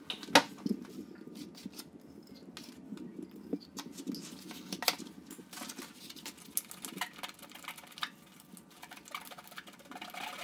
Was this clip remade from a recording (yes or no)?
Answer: no